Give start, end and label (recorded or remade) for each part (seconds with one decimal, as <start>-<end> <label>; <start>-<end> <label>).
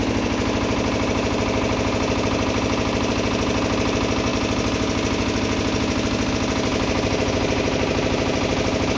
0.0-9.0 recorded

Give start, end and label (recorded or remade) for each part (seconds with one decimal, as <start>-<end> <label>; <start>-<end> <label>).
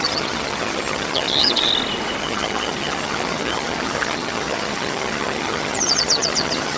0.0-1.7 remade; 1.7-2.2 recorded; 2.2-6.8 remade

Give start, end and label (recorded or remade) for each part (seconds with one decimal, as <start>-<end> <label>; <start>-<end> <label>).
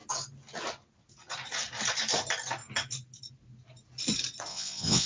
0.0-4.5 recorded; 4.5-5.1 remade